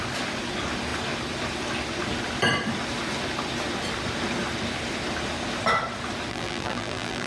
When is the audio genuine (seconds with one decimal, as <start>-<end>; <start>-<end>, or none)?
0.0-6.3